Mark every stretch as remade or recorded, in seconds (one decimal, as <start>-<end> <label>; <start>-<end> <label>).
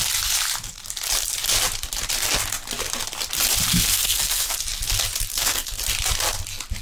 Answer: 0.0-3.7 recorded; 3.7-4.6 remade; 4.6-5.3 recorded; 5.3-5.8 remade; 5.8-6.8 recorded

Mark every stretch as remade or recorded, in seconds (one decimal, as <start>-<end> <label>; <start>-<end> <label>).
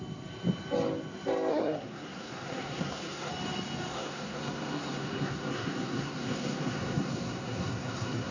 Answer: 0.0-1.5 recorded; 1.5-3.3 remade; 3.3-3.9 recorded; 3.9-8.3 remade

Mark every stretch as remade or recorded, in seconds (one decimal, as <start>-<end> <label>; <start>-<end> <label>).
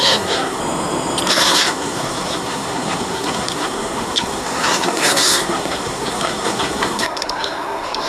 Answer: 0.0-0.6 remade; 0.6-1.3 recorded; 1.3-8.1 remade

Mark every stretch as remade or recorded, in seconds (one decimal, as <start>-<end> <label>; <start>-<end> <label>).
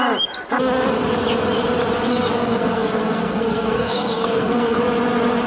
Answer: 0.0-2.1 recorded; 2.1-4.8 remade; 4.8-5.5 recorded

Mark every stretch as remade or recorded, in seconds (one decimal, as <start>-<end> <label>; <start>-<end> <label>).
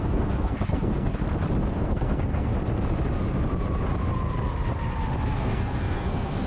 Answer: 0.0-1.1 remade; 1.1-1.7 recorded; 1.7-2.5 remade; 2.5-5.4 recorded; 5.4-6.5 remade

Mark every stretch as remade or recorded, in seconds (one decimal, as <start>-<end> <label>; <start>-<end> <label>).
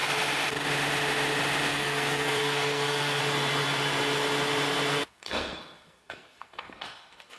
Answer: 0.0-1.7 recorded; 1.7-3.2 remade; 3.2-4.9 recorded; 4.9-7.4 remade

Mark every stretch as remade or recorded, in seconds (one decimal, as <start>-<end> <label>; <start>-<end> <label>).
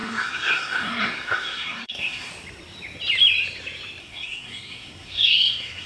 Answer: 0.0-2.3 remade; 2.3-4.0 recorded; 4.0-5.9 remade